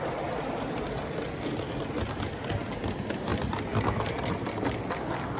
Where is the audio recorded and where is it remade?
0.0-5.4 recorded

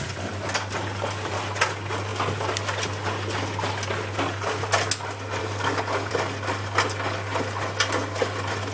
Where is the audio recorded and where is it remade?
0.0-5.4 recorded; 5.4-6.1 remade; 6.1-8.7 recorded